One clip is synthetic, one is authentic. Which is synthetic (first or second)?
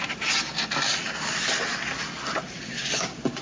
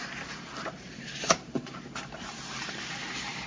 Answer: second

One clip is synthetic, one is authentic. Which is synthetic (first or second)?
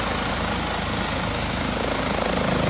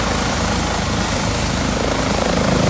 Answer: second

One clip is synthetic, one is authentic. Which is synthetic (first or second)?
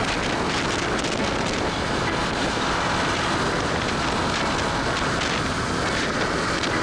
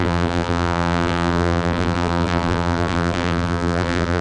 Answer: second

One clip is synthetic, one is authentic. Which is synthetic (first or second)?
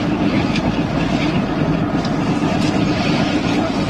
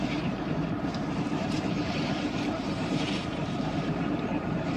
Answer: second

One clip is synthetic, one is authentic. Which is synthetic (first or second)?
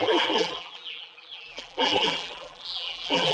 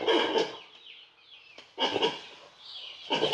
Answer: first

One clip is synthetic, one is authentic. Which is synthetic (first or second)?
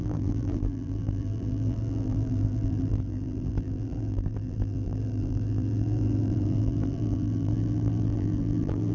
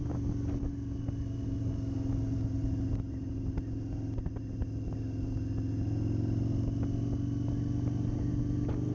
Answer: first